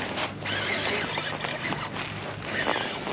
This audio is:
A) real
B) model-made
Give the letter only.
A